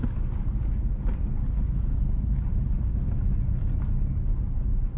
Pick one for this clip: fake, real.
real